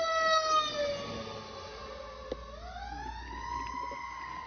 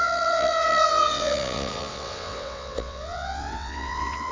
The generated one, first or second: second